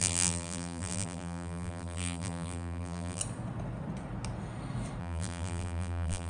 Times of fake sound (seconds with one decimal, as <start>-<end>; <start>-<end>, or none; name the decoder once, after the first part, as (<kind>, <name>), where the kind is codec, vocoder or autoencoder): 0.0-3.2 (vocoder, BigVGAN v2); 5.0-6.3